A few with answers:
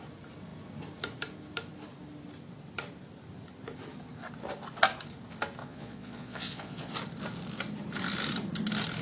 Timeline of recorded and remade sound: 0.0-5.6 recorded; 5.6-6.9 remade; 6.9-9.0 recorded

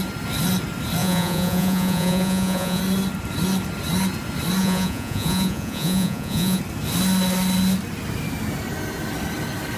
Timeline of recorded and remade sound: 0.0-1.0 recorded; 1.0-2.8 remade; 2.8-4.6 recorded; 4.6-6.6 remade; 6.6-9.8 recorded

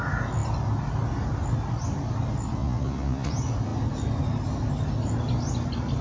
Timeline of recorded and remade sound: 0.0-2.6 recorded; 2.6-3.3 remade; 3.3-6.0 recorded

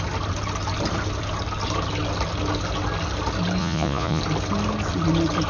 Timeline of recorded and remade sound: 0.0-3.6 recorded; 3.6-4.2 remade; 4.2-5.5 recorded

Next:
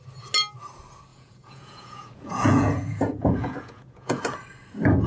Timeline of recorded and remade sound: 0.0-1.1 recorded; 1.1-4.2 remade; 4.2-5.1 recorded

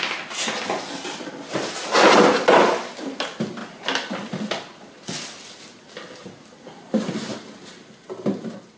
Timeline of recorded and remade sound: 0.0-8.8 recorded

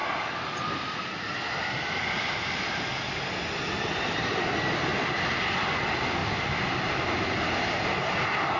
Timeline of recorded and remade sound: 0.0-8.6 recorded